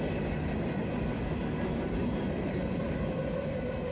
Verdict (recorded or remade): recorded